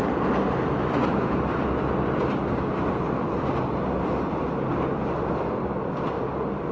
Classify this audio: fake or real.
real